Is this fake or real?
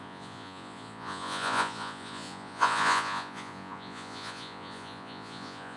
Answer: fake